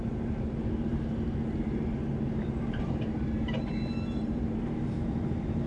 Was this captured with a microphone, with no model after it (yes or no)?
no